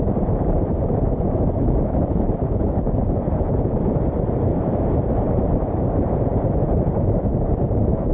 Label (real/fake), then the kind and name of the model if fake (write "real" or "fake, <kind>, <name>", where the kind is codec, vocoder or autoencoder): fake, vocoder, BigVGAN v2